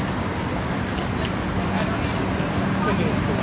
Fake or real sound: real